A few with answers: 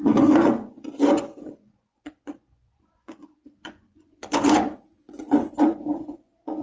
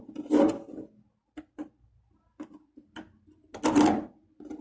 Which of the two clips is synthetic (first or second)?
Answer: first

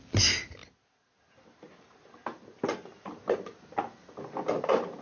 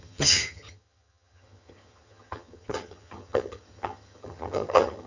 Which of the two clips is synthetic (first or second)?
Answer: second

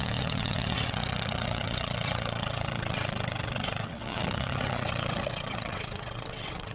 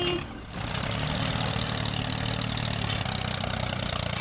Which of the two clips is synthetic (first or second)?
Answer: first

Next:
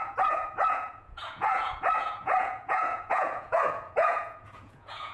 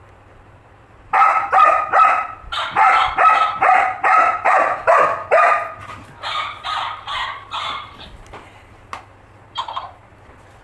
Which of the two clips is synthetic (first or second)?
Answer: first